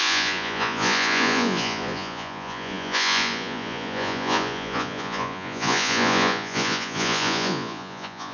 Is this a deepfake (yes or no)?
yes